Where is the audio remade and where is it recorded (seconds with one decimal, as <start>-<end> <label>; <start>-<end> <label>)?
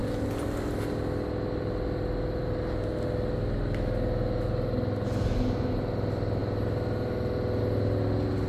0.0-8.5 recorded